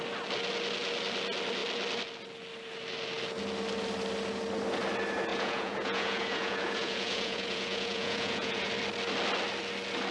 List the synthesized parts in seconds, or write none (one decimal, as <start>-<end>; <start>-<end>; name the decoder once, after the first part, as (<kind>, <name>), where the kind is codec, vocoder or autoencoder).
5.3-8.7 (vocoder, Vocos)